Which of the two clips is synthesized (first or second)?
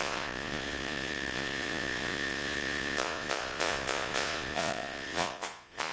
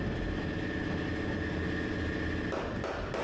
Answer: first